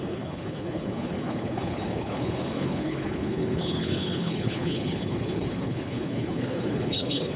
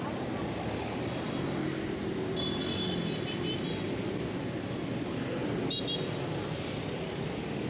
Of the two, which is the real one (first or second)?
second